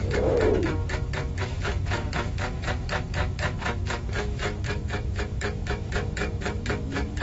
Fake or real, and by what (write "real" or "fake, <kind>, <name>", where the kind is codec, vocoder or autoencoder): fake, autoencoder, DAC-VAE